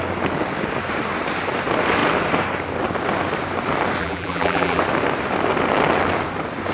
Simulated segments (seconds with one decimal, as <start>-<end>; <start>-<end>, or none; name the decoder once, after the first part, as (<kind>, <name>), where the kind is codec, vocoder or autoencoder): 4.0-4.8 (vocoder, BigVGAN v2)